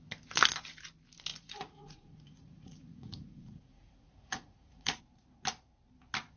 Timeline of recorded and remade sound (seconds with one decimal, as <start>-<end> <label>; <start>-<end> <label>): 0.0-1.3 recorded; 1.3-5.0 remade; 5.0-6.4 recorded